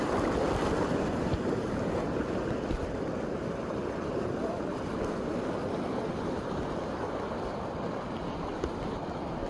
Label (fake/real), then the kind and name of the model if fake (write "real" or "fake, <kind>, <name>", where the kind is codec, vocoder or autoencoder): real